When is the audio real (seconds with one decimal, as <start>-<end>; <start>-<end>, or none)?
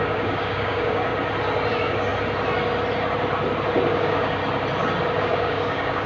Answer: 1.1-1.7; 2.1-3.9; 4.4-5.2